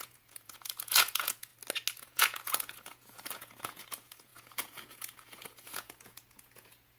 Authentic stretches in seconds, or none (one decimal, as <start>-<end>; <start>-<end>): 1.5-2.0